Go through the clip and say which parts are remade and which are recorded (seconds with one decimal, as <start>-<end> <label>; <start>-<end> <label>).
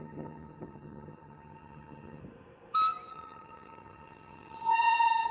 0.0-2.2 remade; 2.2-3.1 recorded; 3.1-5.3 remade